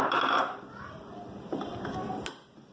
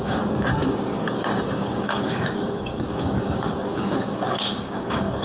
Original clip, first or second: first